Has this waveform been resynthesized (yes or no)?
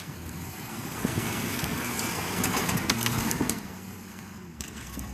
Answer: yes